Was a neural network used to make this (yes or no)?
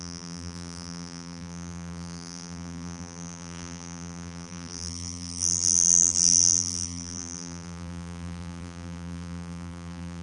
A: yes